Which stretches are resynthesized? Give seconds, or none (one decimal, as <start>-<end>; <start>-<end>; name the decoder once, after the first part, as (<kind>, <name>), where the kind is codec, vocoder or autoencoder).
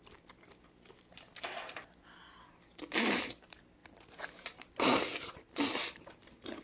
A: 0.0-1.3 (vocoder, BigVGAN v2); 3.3-6.6